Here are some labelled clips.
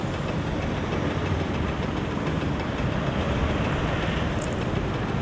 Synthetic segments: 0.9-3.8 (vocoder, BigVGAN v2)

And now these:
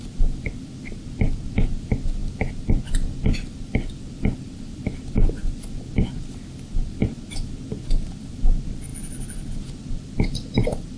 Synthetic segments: none

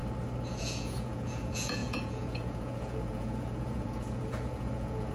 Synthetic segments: 0.5-5.1 (vocoder, Vocos)

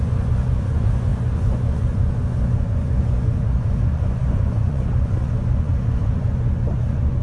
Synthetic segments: 0.0-7.2 (vocoder, Vocos)

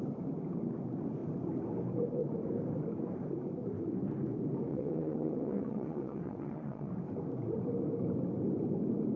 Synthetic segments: 4.7-6.9 (vocoder, WaveNeXt)

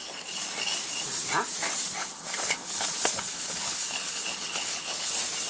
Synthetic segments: 2.0-5.1 (codec, HILCodec)

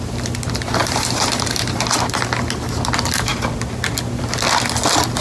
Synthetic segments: 0.8-1.8 (vocoder, BigVGAN v2)